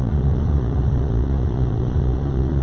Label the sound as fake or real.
fake